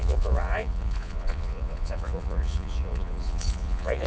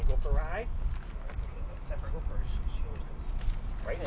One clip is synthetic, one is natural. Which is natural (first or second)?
second